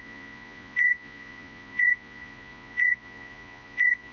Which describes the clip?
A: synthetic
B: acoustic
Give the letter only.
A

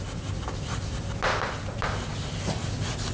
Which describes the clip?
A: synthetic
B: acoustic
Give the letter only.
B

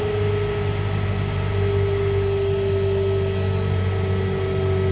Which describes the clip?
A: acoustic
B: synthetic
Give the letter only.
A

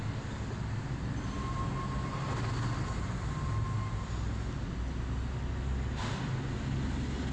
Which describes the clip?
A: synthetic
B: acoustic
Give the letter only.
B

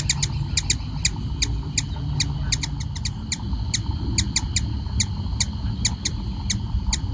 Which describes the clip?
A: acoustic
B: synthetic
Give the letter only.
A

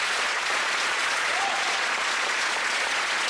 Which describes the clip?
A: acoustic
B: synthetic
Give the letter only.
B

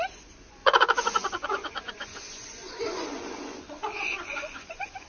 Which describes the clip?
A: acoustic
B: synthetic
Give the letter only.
B